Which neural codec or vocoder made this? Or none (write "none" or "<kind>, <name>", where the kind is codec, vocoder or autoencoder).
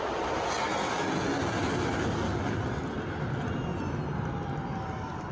none